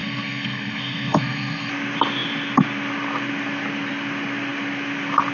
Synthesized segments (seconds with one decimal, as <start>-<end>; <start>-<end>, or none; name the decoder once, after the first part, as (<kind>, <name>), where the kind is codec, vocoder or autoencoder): 0.0-1.7 (codec, SNAC)

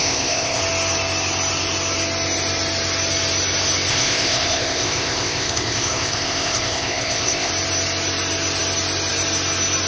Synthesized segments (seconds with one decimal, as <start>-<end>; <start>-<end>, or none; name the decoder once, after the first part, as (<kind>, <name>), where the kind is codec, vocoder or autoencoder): 0.0-0.6 (codec, ZipCodec); 3.9-7.5

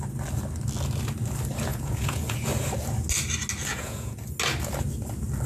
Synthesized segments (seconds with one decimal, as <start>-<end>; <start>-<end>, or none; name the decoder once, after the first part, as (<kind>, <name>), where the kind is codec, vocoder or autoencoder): 1.7-2.5 (vocoder, Vocos); 3.7-4.2

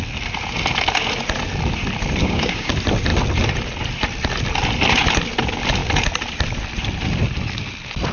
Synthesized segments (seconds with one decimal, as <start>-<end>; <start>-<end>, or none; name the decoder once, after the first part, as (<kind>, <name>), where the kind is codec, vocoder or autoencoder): 2.2-2.7 (codec, DAC)

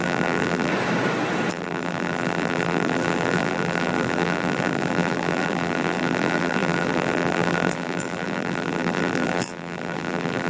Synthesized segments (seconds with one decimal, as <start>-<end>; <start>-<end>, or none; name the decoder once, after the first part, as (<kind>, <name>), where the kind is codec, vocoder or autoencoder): 0.0-0.7 (vocoder, BigVGAN v2); 1.5-10.5

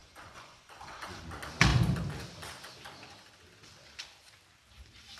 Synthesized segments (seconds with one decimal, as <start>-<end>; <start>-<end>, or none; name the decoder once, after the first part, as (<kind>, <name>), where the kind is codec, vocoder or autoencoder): 0.0-1.2 (vocoder, Vocos)